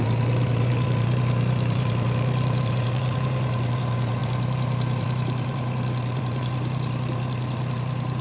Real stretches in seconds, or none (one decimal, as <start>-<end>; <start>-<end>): none